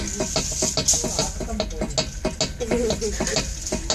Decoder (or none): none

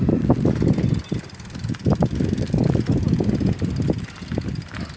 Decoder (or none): vocoder, BigVGAN v2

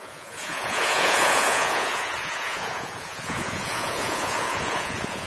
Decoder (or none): vocoder, Vocos